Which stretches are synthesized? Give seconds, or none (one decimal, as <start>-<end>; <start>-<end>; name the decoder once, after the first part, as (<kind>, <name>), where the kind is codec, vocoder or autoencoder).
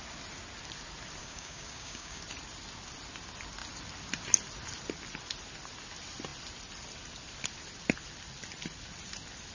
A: 1.2-2.2 (codec, DAC)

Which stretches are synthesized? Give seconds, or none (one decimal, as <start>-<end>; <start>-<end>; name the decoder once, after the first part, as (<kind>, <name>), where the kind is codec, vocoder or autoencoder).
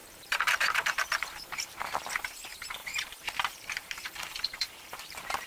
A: 0.0-2.1 (vocoder, BigVGAN v2); 2.8-5.5